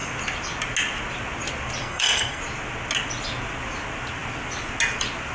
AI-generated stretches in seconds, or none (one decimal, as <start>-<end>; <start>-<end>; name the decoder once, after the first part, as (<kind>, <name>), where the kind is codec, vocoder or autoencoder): 1.8-2.4 (codec, SNAC)

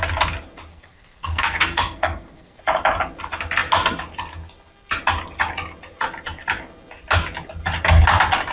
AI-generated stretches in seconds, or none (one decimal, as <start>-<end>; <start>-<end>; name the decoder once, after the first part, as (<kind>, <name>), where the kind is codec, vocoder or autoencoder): 0.7-2.6 (codec, SNAC)